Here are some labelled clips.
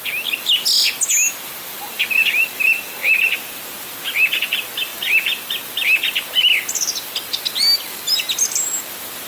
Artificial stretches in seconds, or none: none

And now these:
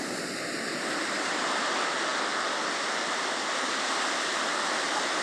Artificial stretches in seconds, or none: none